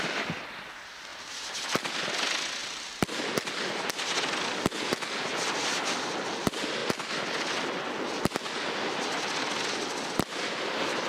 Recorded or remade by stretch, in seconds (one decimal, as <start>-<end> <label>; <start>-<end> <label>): 0.0-1.1 recorded; 1.1-1.7 remade; 1.7-2.6 recorded; 2.6-3.2 remade; 3.2-11.1 recorded